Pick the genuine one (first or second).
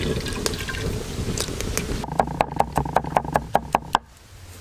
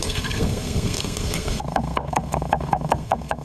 first